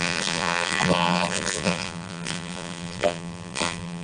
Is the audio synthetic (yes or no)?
yes